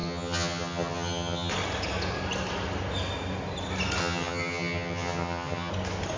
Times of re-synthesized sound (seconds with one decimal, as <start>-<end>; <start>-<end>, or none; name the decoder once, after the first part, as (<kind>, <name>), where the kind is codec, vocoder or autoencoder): 0.0-1.5 (vocoder, HiFi-GAN); 4.0-5.7

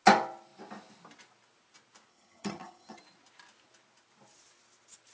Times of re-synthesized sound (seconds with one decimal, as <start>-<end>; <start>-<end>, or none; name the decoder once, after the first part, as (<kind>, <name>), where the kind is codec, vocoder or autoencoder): 2.1-3.0 (vocoder, HiFi-GAN)

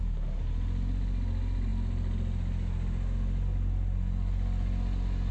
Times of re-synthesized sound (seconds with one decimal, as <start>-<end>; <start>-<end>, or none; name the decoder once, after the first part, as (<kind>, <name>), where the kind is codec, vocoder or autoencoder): none

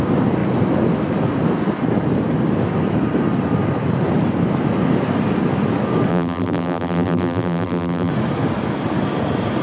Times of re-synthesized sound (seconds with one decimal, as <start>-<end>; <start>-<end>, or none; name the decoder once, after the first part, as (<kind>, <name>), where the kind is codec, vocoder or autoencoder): 6.1-8.1 (vocoder, BigVGAN v2)

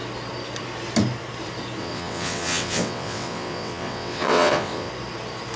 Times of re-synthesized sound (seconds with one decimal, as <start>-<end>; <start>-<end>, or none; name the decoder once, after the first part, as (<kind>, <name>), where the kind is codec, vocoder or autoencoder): 1.8-4.9 (vocoder, WaveNeXt)